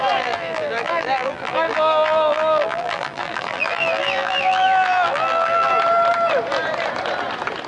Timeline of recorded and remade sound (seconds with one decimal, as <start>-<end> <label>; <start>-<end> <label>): 0.0-5.7 remade; 5.7-7.7 recorded

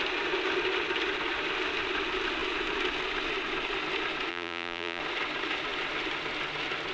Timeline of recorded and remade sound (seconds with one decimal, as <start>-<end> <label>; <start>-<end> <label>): 0.0-4.3 recorded; 4.3-5.0 remade; 5.0-6.9 recorded

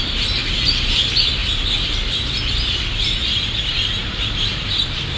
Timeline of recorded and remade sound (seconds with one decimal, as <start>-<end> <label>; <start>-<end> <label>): 0.0-0.4 remade; 0.4-0.9 recorded; 0.9-1.4 remade; 1.4-3.7 recorded; 3.7-5.2 remade

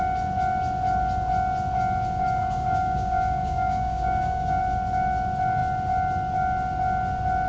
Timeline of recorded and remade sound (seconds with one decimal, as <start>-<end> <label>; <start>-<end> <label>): 0.0-2.4 recorded; 2.4-4.6 remade; 4.6-7.5 recorded

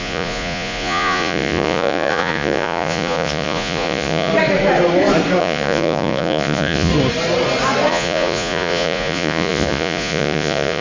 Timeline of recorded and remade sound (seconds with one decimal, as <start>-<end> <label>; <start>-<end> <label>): 0.0-4.3 remade; 4.3-5.4 recorded; 5.4-6.9 remade; 6.9-7.9 recorded; 7.9-10.8 remade